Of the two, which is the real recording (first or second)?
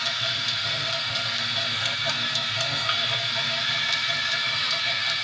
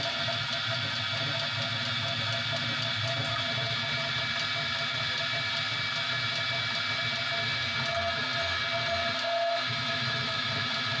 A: second